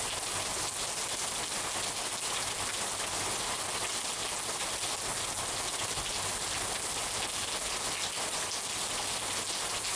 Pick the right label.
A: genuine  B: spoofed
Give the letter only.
A